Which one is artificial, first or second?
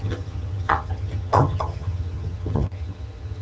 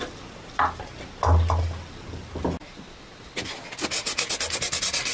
first